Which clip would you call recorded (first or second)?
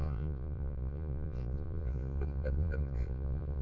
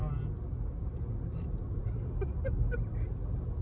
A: second